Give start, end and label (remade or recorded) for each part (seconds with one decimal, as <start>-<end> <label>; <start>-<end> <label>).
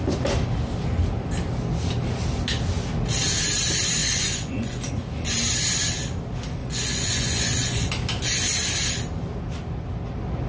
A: 0.0-4.0 recorded; 4.0-4.9 remade; 4.9-6.6 recorded; 6.6-7.9 remade; 7.9-10.5 recorded